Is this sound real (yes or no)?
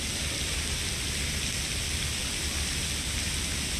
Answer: yes